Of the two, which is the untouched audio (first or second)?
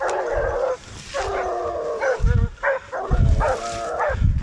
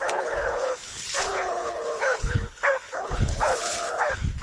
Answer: first